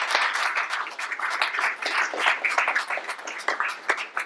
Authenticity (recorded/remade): recorded